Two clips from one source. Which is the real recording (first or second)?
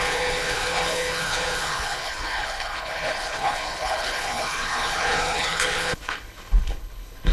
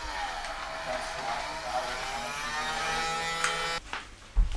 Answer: second